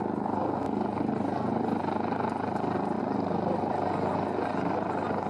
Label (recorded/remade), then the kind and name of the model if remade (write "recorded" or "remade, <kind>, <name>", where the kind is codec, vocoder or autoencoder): recorded